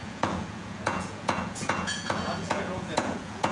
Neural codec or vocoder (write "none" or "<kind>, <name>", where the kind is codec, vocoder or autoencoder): vocoder, Vocos